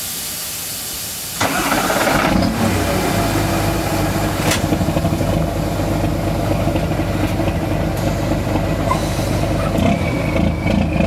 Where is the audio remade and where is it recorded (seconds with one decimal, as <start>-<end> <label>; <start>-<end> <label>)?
0.0-11.1 recorded